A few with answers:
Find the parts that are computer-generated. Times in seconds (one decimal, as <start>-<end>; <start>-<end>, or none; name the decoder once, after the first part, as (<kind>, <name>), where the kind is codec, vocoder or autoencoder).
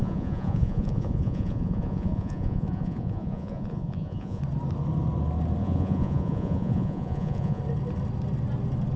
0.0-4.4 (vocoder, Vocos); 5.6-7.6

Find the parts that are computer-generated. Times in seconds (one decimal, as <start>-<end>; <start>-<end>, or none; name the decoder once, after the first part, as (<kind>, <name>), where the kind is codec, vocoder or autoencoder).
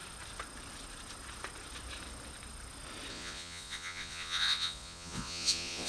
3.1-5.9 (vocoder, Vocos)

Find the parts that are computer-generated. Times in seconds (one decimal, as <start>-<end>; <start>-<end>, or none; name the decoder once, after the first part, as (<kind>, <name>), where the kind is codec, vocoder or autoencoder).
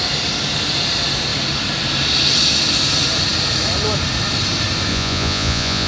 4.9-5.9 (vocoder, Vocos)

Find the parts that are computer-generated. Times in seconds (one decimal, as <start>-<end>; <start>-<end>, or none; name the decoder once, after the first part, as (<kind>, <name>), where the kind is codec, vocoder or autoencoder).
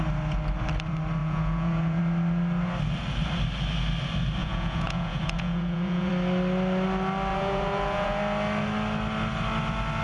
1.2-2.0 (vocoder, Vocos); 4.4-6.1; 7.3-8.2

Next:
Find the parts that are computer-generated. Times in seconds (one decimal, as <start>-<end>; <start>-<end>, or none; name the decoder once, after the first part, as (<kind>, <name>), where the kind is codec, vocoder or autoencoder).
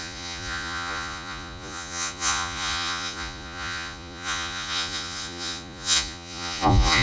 0.0-7.0 (vocoder, Vocos)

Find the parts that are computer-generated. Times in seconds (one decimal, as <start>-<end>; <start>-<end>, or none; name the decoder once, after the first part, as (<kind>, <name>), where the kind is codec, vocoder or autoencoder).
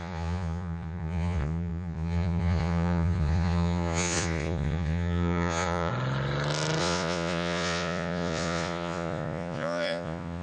0.0-5.9 (vocoder, Vocos); 6.8-10.4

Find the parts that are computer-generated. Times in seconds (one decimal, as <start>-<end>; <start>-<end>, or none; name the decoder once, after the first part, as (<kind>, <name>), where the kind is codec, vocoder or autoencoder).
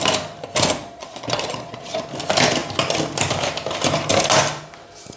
0.8-2.0 (vocoder, Vocos)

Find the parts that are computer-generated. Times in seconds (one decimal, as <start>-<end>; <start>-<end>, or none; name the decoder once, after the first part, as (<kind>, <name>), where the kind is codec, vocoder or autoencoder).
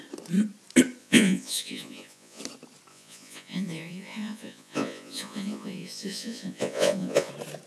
1.0-2.4 (vocoder, Vocos); 2.9-7.3